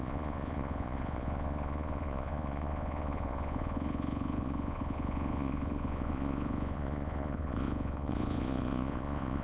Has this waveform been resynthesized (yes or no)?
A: yes